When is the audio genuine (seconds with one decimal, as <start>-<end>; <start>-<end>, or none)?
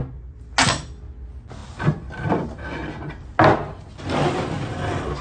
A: 0.0-5.2